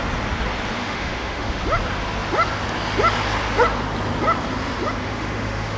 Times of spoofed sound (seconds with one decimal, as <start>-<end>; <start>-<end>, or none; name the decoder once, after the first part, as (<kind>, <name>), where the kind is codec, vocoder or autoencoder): 0.8-1.6 (autoencoder, DAC-VAE); 5.0-5.8